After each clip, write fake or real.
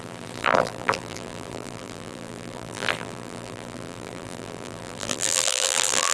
fake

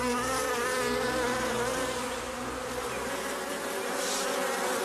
real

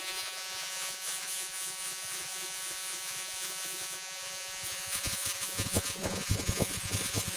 fake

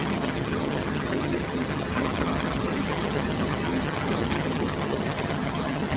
fake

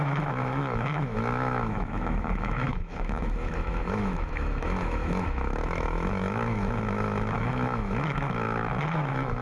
fake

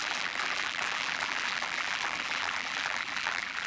fake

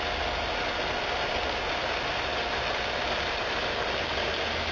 real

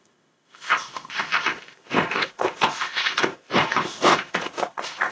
fake